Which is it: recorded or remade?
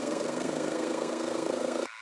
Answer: remade